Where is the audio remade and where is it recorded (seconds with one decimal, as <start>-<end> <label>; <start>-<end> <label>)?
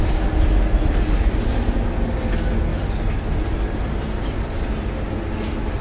0.0-5.8 recorded